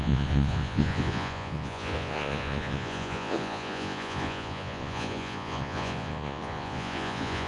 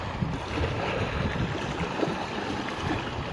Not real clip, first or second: first